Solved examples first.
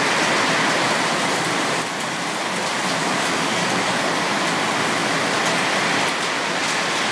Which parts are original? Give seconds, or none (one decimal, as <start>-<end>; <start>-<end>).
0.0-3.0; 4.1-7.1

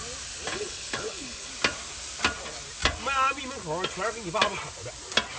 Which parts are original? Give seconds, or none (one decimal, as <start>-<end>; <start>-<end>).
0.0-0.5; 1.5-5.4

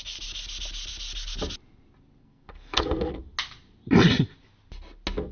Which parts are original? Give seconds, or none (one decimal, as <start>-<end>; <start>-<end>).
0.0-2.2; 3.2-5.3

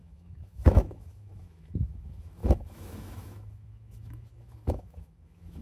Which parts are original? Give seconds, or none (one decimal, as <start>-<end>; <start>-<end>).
none

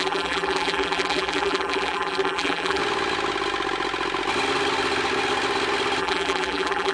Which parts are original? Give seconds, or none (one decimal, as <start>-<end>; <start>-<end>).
2.8-6.0